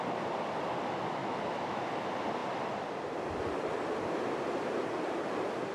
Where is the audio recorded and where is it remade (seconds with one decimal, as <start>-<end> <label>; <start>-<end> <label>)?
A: 0.0-1.2 recorded; 1.2-1.8 remade; 1.8-5.7 recorded